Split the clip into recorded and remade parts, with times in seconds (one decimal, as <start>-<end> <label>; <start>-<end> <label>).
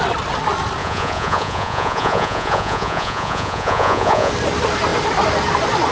0.0-0.8 recorded; 0.8-4.3 remade; 4.3-5.9 recorded